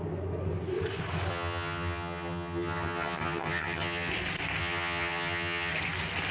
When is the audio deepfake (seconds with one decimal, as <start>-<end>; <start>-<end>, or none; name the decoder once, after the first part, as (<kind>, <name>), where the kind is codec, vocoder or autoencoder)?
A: 1.3-4.1 (vocoder, HiFi-GAN); 4.6-5.7